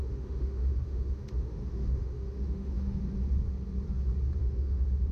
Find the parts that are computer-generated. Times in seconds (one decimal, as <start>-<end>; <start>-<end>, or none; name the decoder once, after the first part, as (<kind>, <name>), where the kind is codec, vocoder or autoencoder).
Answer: 0.0-3.0 (autoencoder, DAC-VAE); 4.4-5.1